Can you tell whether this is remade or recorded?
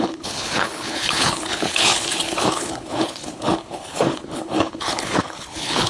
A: remade